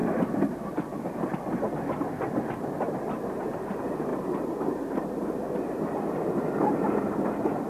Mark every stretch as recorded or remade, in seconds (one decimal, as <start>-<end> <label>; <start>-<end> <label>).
0.0-1.0 remade; 1.0-7.7 recorded